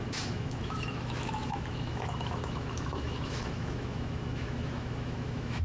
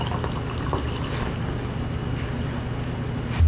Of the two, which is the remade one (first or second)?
first